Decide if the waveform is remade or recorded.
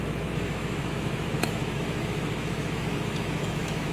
remade